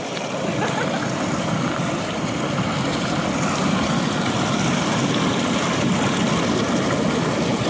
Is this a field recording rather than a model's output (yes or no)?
yes